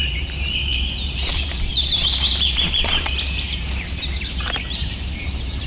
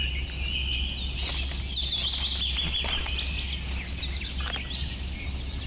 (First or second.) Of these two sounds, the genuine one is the second